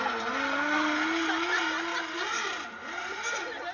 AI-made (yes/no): no